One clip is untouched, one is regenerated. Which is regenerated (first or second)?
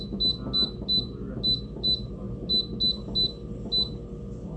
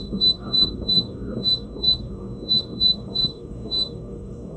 second